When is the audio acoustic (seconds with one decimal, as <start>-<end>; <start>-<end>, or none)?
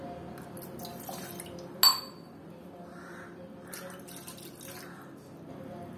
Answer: 0.0-6.0